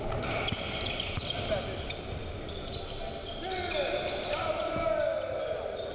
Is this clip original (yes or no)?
yes